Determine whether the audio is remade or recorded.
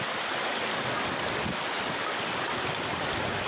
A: recorded